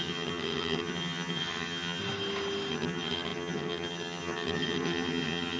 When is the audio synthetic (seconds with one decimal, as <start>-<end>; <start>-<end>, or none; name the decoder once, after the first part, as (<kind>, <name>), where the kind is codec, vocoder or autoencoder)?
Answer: 0.0-2.0 (vocoder, HiFi-GAN); 2.7-5.6